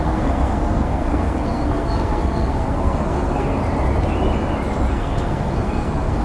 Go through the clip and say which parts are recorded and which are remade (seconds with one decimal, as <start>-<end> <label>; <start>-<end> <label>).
0.0-3.6 remade; 3.6-4.9 recorded; 4.9-6.2 remade